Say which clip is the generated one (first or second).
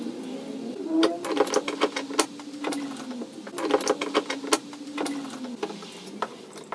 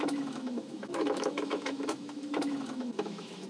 second